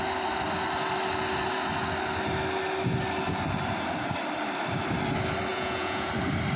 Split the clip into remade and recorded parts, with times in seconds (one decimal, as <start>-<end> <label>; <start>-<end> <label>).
0.0-5.5 recorded; 5.5-6.1 remade; 6.1-6.6 recorded